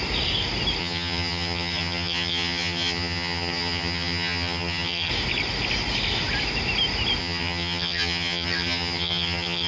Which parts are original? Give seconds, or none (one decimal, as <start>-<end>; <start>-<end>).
0.0-0.8; 5.1-7.2